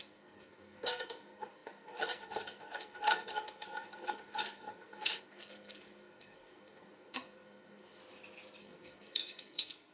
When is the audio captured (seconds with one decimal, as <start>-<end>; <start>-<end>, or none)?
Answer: 8.0-8.6